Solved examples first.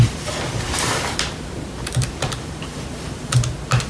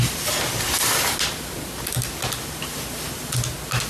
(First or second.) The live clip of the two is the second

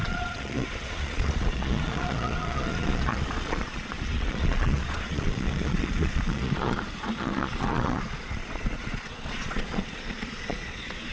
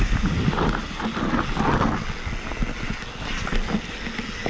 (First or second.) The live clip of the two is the second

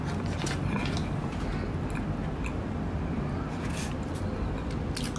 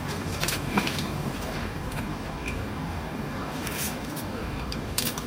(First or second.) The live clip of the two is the first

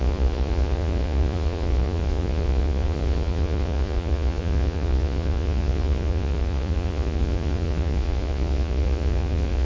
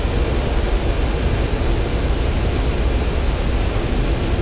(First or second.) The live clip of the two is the second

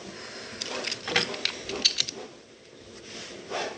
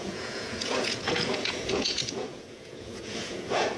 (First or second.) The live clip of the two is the first